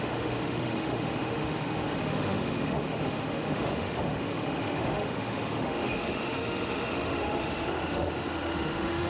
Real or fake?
fake